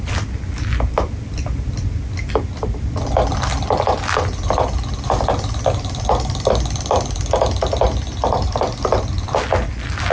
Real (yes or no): yes